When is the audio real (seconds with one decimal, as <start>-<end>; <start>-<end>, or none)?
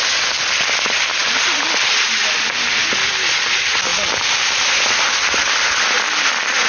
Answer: 0.0-6.7